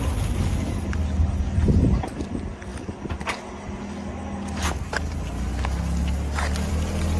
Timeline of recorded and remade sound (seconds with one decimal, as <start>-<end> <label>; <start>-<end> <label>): 0.0-7.2 recorded